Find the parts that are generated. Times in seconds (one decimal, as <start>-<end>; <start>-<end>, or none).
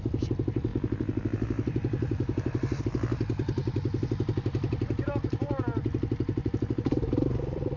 none